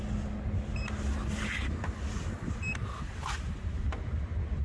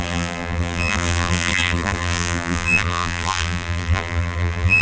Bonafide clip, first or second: first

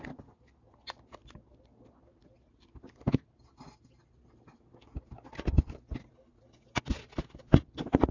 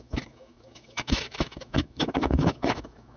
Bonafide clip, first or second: first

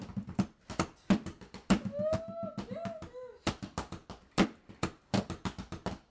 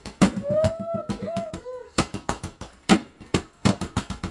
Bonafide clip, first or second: first